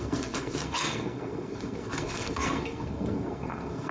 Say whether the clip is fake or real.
fake